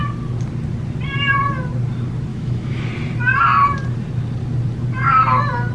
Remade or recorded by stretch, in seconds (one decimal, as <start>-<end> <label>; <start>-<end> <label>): 0.0-2.3 recorded; 2.3-2.9 remade; 2.9-5.7 recorded